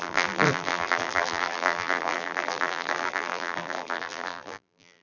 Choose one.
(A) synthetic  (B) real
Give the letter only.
A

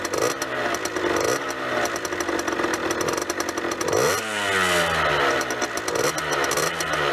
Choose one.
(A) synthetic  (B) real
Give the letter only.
B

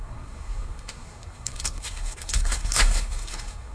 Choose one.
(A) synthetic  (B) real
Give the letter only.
A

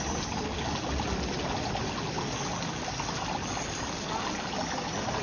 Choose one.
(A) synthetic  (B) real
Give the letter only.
B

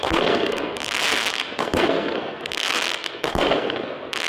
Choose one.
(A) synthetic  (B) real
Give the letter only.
A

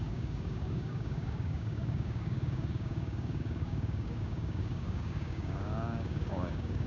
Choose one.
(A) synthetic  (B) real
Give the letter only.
A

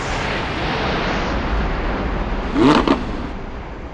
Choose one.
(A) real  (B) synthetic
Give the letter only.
A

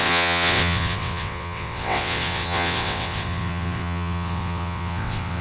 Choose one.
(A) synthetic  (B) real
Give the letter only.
A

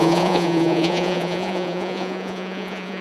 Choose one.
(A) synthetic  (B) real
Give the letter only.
A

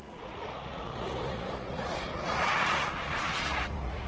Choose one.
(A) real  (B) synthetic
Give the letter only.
B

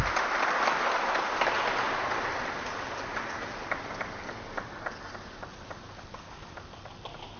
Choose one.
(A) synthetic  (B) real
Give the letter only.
B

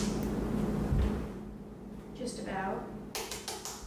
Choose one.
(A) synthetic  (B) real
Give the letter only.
B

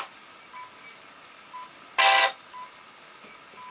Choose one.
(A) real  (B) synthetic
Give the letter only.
A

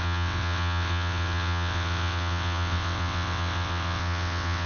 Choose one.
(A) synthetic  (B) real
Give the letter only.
A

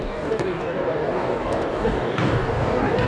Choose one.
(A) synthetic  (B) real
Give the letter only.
A